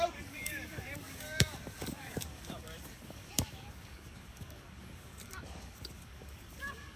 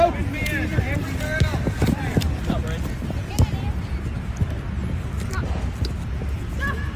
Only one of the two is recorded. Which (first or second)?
second